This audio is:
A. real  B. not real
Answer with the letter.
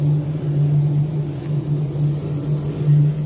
A